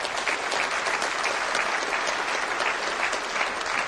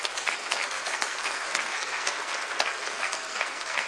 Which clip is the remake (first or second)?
second